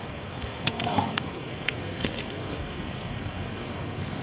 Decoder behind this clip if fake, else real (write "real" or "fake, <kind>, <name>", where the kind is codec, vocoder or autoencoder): fake, codec, SNAC